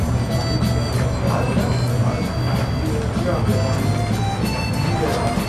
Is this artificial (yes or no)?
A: no